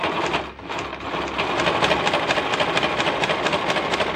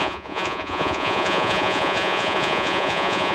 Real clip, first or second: first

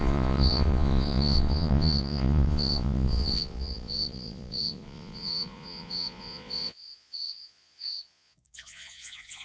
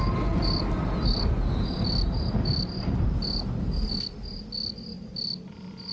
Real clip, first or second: second